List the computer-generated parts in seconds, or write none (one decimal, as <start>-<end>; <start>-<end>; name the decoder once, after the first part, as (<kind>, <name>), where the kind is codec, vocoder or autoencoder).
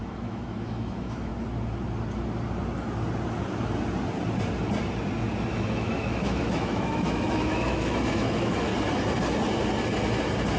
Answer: 0.0-1.3 (autoencoder, DAC-VAE); 5.5-8.7